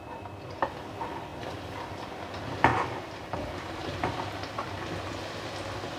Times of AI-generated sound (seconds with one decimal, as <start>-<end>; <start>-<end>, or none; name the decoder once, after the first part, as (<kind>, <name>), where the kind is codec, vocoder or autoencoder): 1.3-2.3 (vocoder, BigVGAN v2); 3.8-4.8